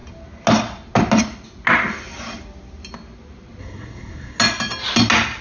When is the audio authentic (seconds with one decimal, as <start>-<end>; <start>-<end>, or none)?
0.0-3.6; 4.4-5.4